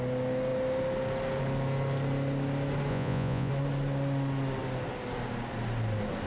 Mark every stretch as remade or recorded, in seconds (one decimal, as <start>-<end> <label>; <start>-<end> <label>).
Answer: 0.0-2.9 recorded; 2.9-3.5 remade; 3.5-6.3 recorded